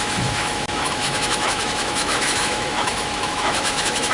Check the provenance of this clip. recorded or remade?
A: remade